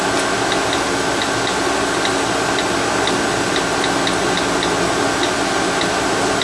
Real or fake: real